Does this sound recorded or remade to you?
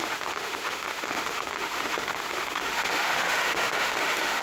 remade